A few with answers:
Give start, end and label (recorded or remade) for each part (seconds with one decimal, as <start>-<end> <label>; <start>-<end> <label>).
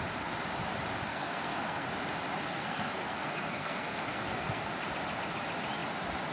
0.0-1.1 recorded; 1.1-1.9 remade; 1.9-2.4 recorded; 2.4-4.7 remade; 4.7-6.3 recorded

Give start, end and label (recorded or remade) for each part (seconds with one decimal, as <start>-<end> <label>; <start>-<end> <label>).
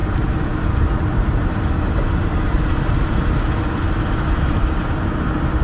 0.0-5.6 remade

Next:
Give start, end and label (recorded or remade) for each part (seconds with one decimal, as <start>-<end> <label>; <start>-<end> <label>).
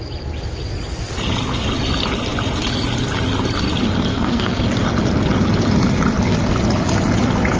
0.0-4.1 recorded; 4.1-4.6 remade; 4.6-7.6 recorded